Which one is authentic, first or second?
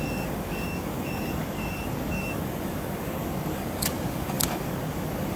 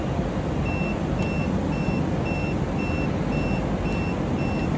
second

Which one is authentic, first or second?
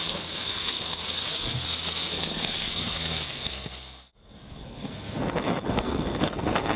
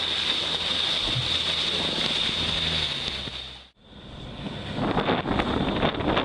second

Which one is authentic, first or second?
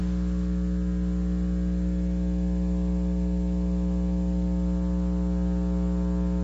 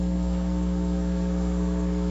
first